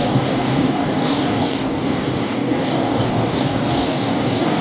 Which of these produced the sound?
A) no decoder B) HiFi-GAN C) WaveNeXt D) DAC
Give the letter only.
D